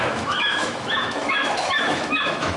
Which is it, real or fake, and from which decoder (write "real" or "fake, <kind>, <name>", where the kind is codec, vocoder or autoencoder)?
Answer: fake, autoencoder, DAC-VAE